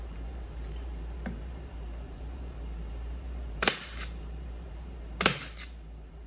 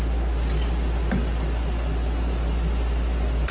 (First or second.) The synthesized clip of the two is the first